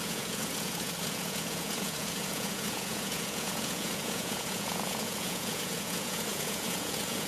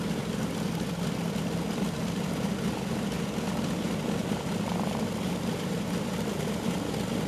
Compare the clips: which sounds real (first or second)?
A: second